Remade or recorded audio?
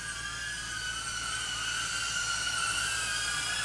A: recorded